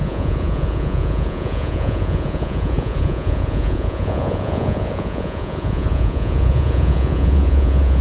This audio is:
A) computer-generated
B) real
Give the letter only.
A